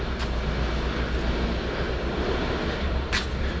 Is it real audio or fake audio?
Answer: real